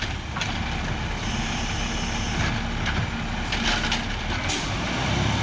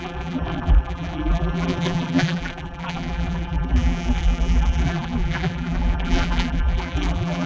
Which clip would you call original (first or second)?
first